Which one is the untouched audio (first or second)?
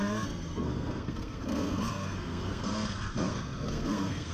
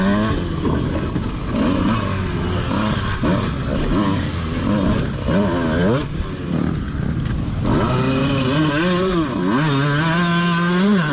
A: second